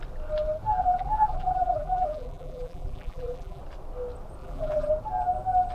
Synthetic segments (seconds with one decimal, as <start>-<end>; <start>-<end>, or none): 0.8-3.6; 4.4-4.9